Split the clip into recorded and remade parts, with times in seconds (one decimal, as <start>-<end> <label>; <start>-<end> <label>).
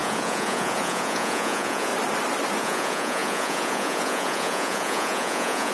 0.0-1.9 remade; 1.9-2.6 recorded; 2.6-5.7 remade